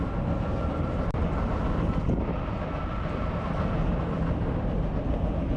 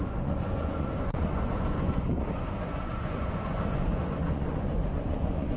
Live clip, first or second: first